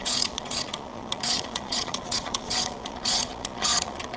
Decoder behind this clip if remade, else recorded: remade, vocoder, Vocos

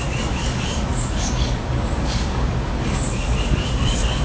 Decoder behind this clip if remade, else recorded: remade, codec, DAC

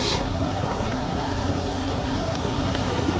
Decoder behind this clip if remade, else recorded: remade, codec, SNAC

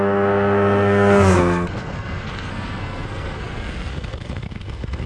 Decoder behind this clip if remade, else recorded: remade, codec, SNAC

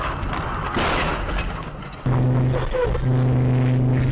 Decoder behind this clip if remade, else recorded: recorded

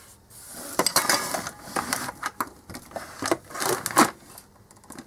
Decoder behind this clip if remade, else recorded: recorded